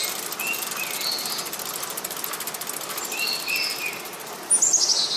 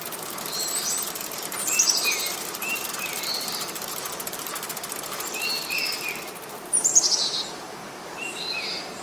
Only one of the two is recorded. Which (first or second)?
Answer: first